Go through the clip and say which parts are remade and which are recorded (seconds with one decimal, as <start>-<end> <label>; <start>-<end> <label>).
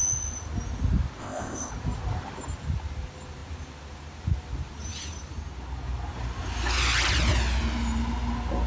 0.0-1.2 recorded; 1.2-1.7 remade; 1.7-8.7 recorded